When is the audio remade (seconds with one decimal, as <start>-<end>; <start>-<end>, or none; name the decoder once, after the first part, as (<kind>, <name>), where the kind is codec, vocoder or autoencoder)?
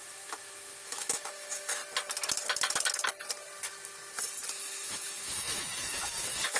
0.0-1.8 (autoencoder, DAC-VAE); 4.5-6.6